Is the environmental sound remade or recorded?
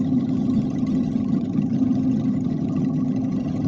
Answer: remade